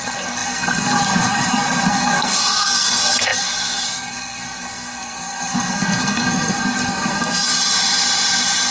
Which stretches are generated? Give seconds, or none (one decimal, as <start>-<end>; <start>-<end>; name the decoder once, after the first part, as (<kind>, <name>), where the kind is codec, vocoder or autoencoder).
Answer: 0.0-7.5 (codec, SNAC)